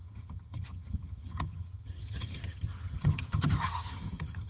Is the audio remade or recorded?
remade